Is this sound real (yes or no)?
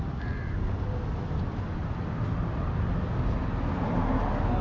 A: yes